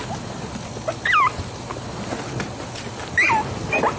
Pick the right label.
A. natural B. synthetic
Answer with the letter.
A